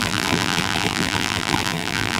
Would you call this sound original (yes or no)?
no